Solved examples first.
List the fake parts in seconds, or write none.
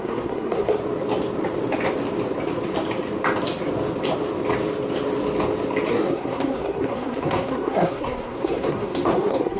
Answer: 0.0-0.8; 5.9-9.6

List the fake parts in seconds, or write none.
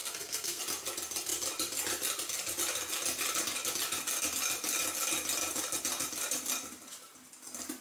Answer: 0.0-0.6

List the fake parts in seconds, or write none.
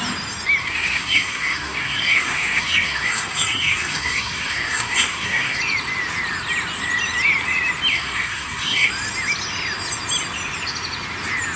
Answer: 0.6-5.6; 7.9-8.9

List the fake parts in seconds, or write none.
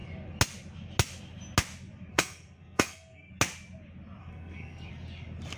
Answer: 2.1-3.3; 4.2-4.9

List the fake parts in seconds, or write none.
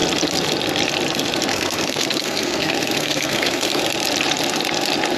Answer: 1.5-3.8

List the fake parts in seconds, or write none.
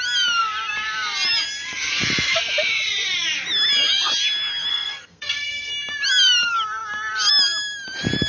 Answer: 4.7-5.7